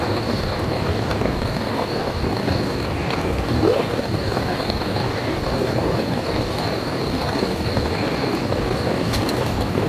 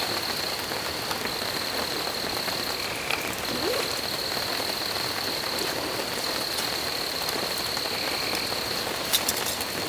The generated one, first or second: first